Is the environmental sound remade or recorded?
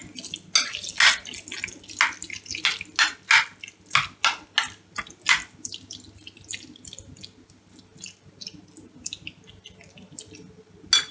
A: recorded